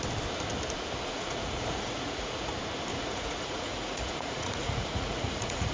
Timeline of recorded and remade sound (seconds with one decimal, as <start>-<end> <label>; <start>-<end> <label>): 0.0-1.1 recorded; 1.1-2.5 remade; 2.5-2.9 recorded; 2.9-5.7 remade